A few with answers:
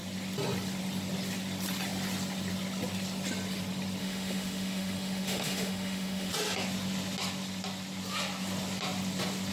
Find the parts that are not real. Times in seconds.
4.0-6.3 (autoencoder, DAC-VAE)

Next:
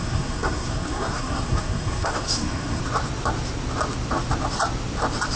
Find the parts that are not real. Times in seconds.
0.0-2.8 (codec, SNAC)

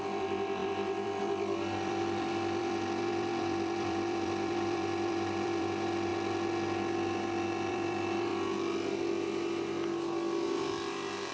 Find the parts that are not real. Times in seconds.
0.0-6.1 (vocoder, BigVGAN v2); 7.7-8.3

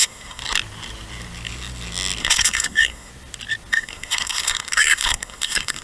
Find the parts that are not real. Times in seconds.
0.0-0.4 (codec, SNAC); 2.2-3.1; 3.7-5.8